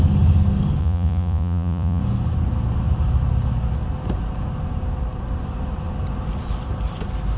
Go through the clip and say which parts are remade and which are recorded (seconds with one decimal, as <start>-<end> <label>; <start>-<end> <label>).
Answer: 0.0-0.8 recorded; 0.8-2.0 remade; 2.0-7.4 recorded